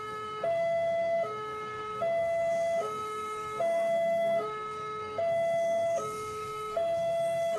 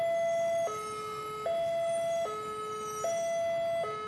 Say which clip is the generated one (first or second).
first